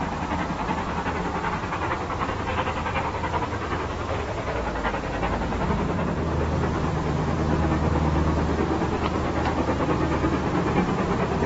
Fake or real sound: real